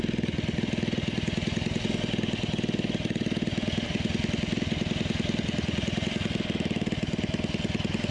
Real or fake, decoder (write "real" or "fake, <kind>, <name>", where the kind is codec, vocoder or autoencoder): real